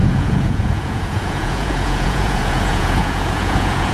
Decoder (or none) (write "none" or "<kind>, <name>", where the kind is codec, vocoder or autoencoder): vocoder, Vocos